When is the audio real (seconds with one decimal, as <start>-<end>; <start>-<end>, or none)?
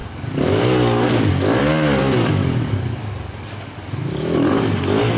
1.3-2.4; 4.6-5.2